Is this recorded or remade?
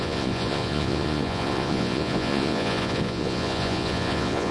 remade